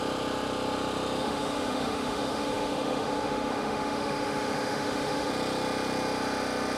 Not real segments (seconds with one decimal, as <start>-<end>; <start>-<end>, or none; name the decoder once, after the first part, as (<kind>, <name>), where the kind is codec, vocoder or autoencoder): 1.2-5.3 (autoencoder, DAC-VAE)